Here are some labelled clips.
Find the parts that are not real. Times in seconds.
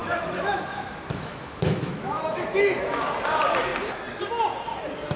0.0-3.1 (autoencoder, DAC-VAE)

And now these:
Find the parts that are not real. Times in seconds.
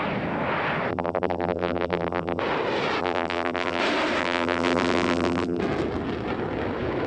0.9-2.4 (vocoder, BigVGAN v2); 3.0-3.8; 4.2-5.6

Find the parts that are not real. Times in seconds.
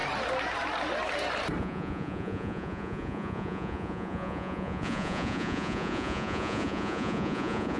1.6-7.8 (vocoder, Vocos)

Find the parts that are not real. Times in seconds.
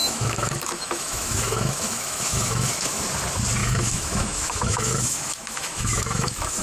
0.0-3.0 (autoencoder, DAC-VAE); 3.6-6.6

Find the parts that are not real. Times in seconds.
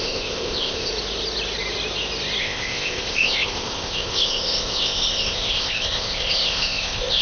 0.0-0.9 (codec, ZipCodec); 2.4-7.2